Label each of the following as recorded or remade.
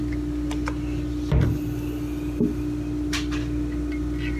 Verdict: recorded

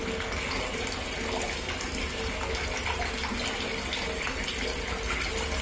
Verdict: recorded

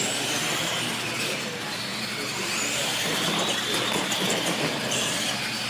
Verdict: remade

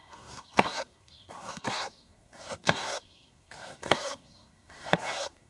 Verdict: remade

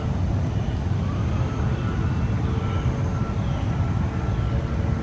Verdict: recorded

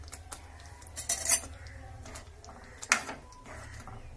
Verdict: recorded